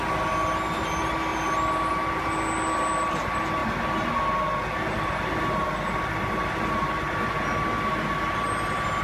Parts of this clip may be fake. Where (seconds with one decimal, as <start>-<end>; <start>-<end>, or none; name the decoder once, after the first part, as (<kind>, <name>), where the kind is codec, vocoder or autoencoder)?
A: none